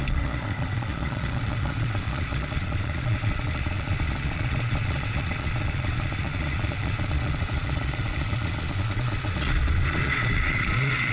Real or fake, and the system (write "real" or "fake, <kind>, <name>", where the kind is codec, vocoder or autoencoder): fake, vocoder, Vocos